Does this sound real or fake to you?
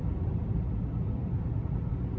real